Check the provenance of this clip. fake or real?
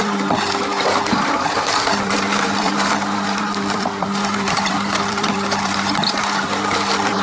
fake